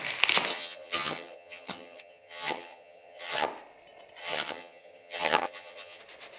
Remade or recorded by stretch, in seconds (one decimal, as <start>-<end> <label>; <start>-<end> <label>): 0.0-0.5 recorded; 0.5-3.5 remade; 3.5-4.2 recorded; 4.2-6.0 remade; 6.0-6.4 recorded